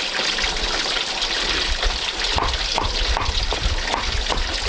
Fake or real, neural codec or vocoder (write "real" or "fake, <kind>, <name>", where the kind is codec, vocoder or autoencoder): real